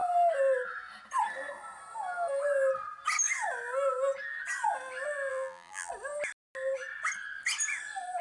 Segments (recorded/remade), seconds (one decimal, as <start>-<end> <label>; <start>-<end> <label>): 0.0-5.3 recorded; 5.3-5.9 remade; 5.9-8.2 recorded